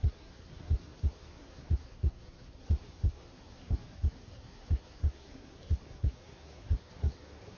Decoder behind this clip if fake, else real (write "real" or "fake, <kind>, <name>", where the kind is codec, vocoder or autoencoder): fake, codec, SNAC